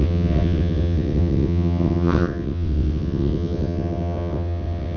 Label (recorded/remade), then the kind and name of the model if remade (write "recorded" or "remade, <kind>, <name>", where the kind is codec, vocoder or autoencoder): remade, vocoder, WaveNeXt